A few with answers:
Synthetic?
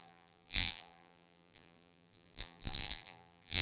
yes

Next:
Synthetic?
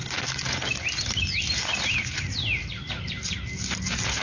no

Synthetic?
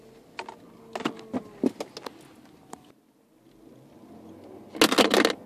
no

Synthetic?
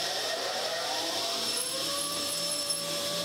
yes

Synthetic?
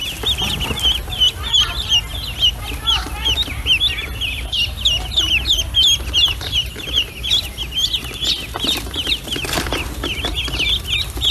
no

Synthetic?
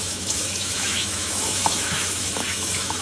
yes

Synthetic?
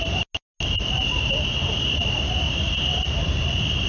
no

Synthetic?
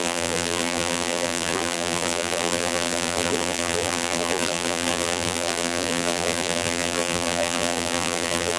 yes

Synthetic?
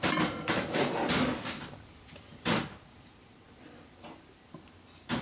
no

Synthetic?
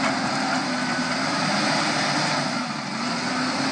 no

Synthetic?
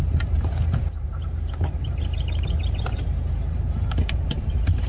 yes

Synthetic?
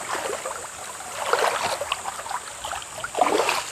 no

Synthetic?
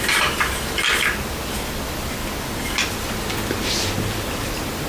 no